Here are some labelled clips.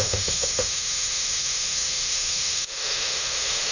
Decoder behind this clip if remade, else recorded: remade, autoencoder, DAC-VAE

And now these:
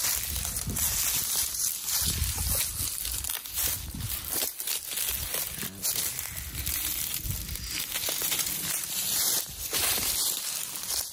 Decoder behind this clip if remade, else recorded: recorded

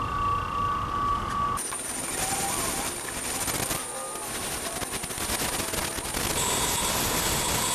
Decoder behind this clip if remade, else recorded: recorded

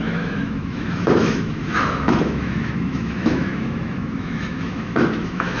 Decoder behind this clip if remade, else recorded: remade, autoencoder, DAC-VAE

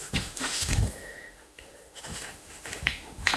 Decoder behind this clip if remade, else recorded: remade, autoencoder, DAC-VAE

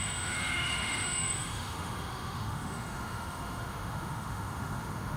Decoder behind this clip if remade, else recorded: remade, autoencoder, DAC-VAE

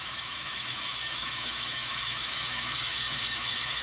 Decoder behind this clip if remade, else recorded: remade, autoencoder, DAC-VAE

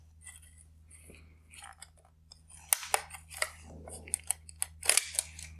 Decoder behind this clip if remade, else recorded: recorded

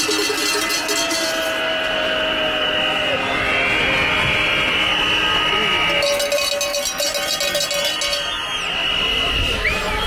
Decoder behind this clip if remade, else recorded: recorded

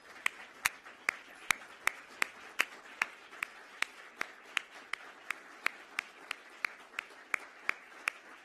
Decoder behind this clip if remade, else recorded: recorded